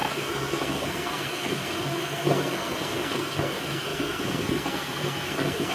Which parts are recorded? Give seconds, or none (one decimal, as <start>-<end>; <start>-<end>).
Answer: none